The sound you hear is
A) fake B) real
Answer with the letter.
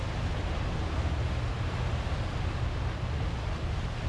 B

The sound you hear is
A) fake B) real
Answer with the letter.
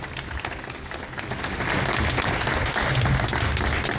B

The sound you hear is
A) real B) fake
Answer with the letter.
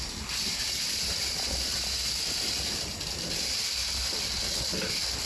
A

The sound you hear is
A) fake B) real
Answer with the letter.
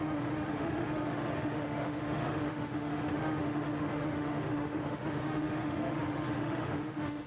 A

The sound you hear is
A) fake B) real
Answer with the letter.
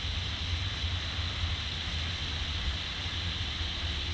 B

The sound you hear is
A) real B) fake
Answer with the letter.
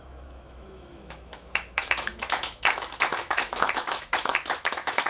B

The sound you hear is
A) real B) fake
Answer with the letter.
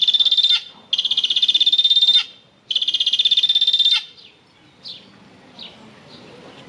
A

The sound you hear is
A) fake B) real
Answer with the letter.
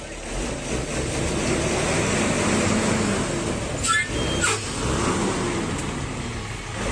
B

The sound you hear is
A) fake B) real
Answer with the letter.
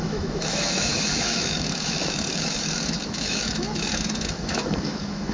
A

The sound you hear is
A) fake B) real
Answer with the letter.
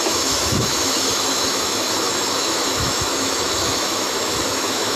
A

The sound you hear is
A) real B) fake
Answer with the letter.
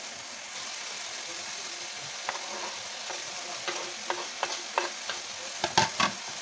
A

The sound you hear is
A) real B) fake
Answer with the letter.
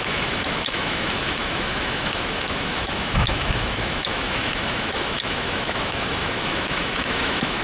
B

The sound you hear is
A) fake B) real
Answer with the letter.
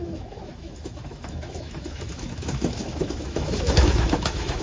A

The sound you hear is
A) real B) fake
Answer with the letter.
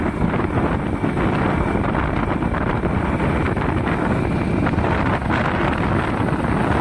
A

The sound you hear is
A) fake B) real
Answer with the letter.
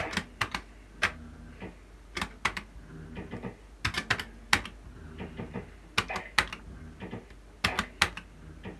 B